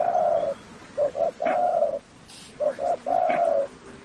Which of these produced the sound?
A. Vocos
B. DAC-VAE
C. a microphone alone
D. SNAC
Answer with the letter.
C